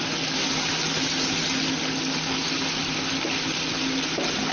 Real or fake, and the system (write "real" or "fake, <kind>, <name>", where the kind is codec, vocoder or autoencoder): real